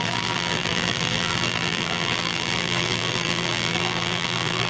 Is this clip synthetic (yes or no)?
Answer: yes